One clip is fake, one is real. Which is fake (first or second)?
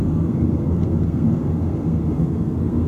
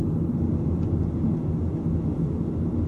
first